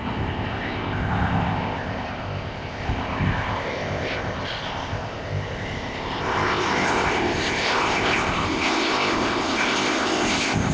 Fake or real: fake